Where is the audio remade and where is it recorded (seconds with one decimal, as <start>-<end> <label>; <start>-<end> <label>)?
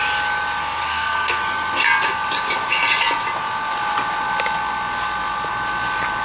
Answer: 0.0-0.8 recorded; 0.8-1.4 remade; 1.4-6.2 recorded